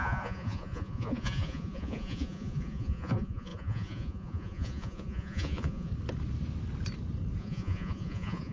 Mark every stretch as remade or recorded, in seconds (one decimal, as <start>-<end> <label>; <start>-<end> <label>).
0.0-5.9 remade; 5.9-7.4 recorded; 7.4-8.5 remade